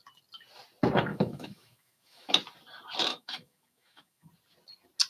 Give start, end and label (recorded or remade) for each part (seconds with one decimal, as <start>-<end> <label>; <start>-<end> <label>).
0.0-1.1 recorded; 1.1-2.3 remade; 2.3-3.1 recorded; 3.1-4.3 remade; 4.3-5.1 recorded